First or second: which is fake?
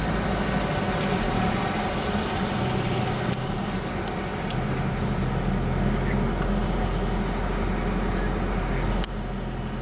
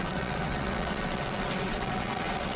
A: second